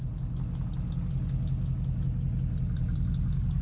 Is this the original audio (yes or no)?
yes